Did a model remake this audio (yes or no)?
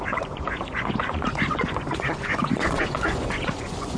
yes